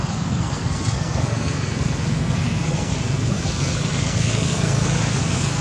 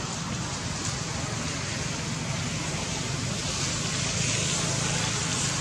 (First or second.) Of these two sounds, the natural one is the second